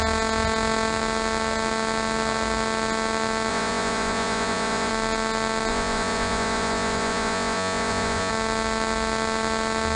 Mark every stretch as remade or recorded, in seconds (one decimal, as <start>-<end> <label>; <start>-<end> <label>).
0.0-3.5 recorded; 3.5-4.9 remade; 4.9-5.7 recorded; 5.7-8.3 remade; 8.3-10.0 recorded